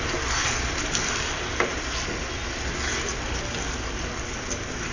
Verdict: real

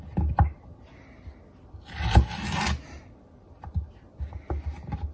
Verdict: real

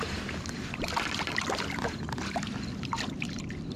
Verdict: fake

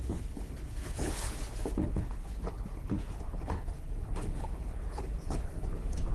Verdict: fake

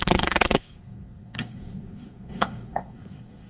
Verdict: fake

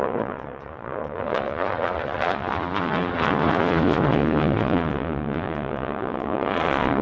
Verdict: fake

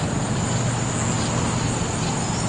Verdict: real